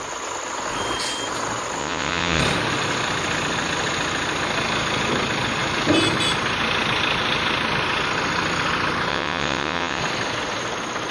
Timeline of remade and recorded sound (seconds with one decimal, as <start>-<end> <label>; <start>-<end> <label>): 0.0-1.8 recorded; 1.8-2.4 remade; 2.4-9.1 recorded; 9.1-10.0 remade; 10.0-11.1 recorded